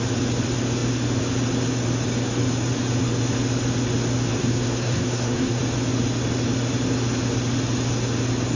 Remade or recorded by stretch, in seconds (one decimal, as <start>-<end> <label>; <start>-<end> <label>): 0.0-4.3 recorded; 4.3-5.6 remade; 5.6-8.6 recorded